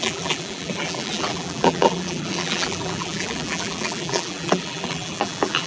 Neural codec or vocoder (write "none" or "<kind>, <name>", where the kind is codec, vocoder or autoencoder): vocoder, BigVGAN v2